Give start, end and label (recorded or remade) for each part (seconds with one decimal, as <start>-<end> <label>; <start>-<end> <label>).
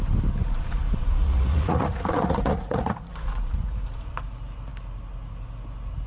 0.0-0.4 recorded; 0.4-4.1 remade; 4.1-6.1 recorded